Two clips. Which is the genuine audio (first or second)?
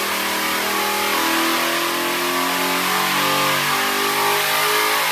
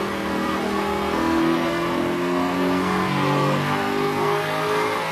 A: first